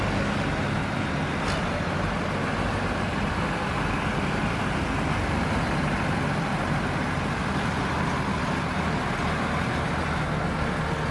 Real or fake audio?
real